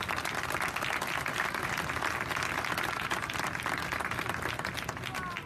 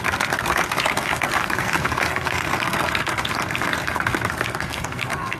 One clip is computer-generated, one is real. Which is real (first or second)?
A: first